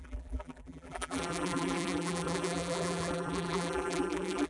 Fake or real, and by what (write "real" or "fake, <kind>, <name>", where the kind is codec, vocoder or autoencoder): fake, vocoder, BigVGAN v2